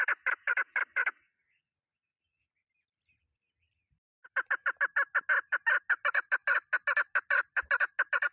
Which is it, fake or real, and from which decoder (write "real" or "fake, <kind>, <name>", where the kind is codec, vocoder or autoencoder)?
real